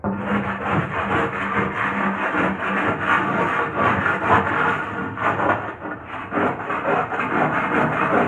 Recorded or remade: recorded